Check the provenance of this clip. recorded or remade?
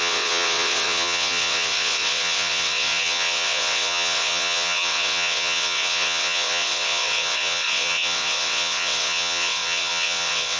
remade